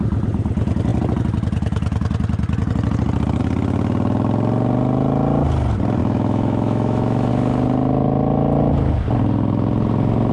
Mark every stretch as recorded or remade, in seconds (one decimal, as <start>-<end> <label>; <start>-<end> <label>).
0.0-6.0 recorded; 6.0-7.3 remade; 7.3-10.3 recorded